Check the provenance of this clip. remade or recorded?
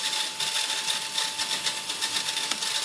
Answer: recorded